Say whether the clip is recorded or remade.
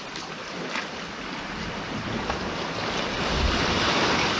recorded